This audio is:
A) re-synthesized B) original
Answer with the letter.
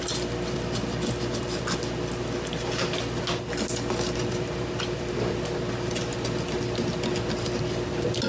B